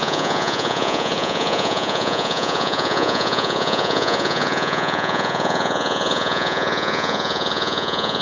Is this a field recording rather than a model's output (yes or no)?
no